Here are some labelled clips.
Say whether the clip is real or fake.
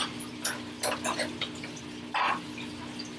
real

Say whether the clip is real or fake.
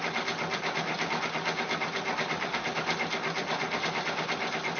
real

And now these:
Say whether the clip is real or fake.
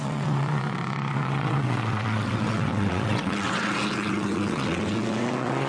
fake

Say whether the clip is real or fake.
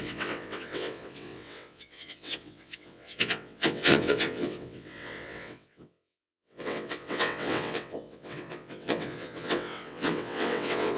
fake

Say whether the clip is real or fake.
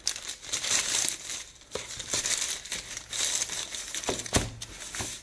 real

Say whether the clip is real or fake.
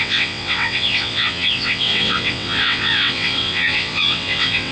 fake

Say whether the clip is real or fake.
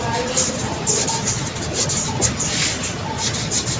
real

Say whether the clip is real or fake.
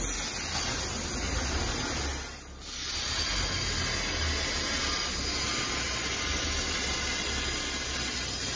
real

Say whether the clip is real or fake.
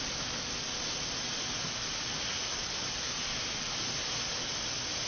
real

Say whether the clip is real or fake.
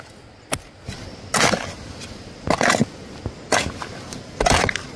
real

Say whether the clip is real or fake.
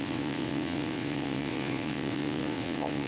fake